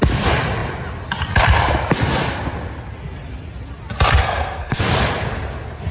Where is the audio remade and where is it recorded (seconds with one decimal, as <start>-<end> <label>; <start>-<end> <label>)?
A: 0.0-4.2 recorded; 4.2-4.8 remade; 4.8-5.9 recorded